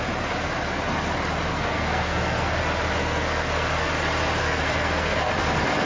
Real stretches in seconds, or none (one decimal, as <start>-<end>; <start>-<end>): 0.0-1.5; 2.5-3.0; 3.9-4.4; 5.3-5.9